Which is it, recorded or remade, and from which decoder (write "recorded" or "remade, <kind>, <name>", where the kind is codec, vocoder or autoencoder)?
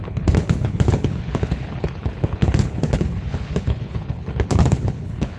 remade, codec, HILCodec